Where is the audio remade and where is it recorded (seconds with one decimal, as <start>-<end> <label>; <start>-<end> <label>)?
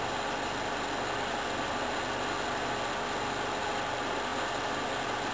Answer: 0.0-5.3 recorded